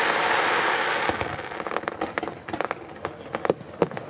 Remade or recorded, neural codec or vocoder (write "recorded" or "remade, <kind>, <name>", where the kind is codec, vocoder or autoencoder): recorded